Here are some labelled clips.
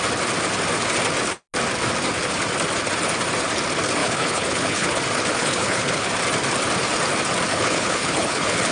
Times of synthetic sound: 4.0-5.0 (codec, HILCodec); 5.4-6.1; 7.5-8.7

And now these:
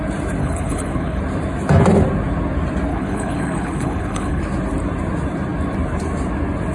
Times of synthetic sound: 0.4-1.2 (codec, HILCodec); 2.9-4.4

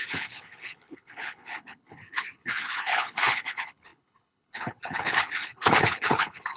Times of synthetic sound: 0.0-6.6 (codec, HILCodec)

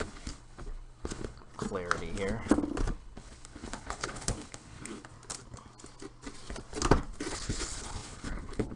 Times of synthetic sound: 0.0-1.5 (codec, HILCodec); 2.9-5.1; 7.3-8.8

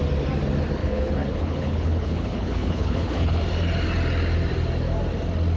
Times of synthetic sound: 0.8-3.4 (codec, HILCodec)

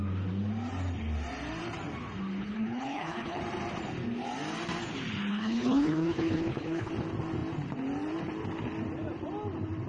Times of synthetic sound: 2.4-3.4 (codec, HILCodec); 5.3-6.9